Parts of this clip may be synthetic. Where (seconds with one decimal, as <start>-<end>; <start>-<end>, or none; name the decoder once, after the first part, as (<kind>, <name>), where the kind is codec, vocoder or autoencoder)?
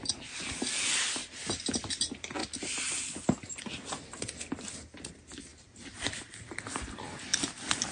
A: 7.3-7.9 (vocoder, BigVGAN v2)